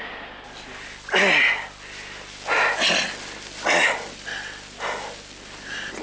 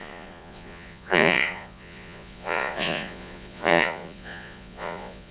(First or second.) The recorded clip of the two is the first